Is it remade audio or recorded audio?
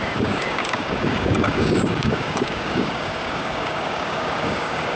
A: remade